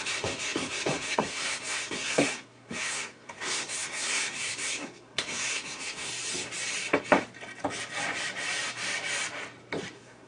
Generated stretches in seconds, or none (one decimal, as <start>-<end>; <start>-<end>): 0.0-6.1; 9.9-10.3